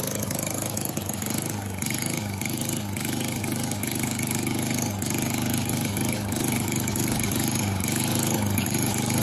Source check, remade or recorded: remade